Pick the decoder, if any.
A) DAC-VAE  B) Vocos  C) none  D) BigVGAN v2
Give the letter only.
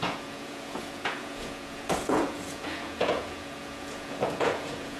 B